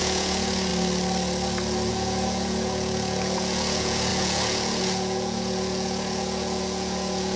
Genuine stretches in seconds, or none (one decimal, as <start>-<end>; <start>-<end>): 0.7-1.9